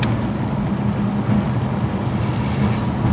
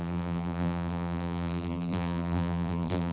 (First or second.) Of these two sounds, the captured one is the first